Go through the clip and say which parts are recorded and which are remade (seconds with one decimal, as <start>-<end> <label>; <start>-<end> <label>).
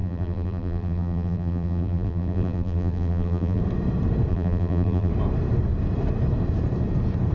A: 0.0-3.6 remade; 3.6-4.3 recorded; 4.3-5.1 remade; 5.1-7.3 recorded